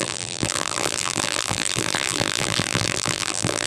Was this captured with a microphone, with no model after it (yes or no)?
no